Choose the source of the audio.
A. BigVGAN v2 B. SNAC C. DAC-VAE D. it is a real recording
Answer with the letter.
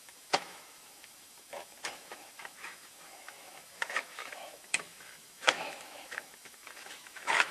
C